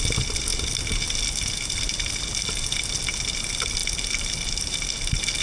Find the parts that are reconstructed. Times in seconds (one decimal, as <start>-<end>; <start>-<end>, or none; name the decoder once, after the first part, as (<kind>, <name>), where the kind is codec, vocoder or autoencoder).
none